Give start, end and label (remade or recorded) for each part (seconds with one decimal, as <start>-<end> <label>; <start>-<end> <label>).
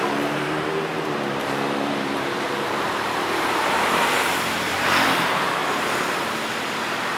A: 0.0-5.6 remade; 5.6-7.2 recorded